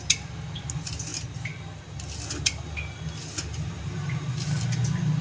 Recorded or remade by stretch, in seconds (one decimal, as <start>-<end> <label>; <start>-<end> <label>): 0.0-5.2 recorded